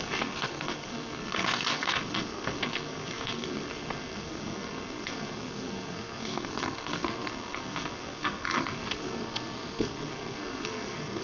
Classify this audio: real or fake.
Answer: fake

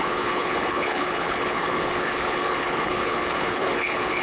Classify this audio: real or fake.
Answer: fake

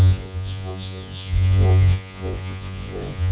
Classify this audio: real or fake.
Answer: fake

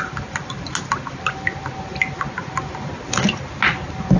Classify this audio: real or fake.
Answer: real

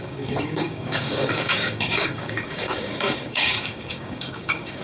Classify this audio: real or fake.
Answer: fake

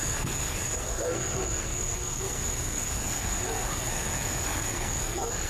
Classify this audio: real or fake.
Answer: fake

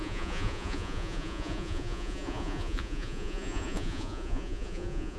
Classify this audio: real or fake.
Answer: fake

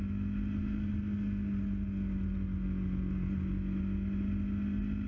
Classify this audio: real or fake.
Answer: real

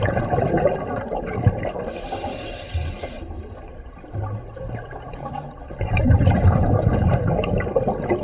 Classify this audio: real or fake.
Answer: real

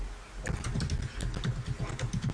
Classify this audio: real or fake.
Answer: real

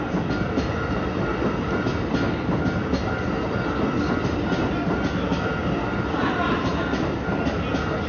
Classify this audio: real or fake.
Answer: real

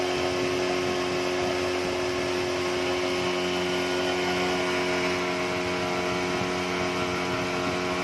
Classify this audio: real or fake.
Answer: real